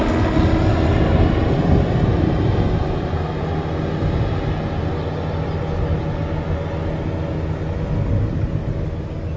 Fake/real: real